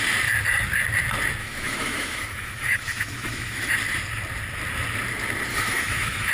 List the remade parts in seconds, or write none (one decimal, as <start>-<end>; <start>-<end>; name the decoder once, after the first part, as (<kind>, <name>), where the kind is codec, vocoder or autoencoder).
1.4-3.7 (autoencoder, DAC-VAE); 5.5-6.3